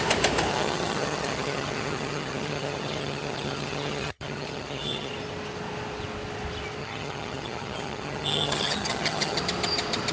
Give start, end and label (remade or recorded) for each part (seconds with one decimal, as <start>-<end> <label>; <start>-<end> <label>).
0.0-0.5 recorded; 0.5-5.1 remade; 5.1-6.8 recorded; 6.8-9.4 remade; 9.4-10.1 recorded